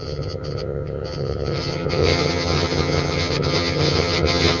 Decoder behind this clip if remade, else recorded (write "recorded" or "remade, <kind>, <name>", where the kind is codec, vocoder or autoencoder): remade, vocoder, HiFi-GAN